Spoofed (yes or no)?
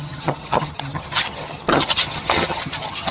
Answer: yes